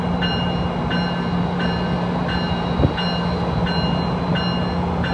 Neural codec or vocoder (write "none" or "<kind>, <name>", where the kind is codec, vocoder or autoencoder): none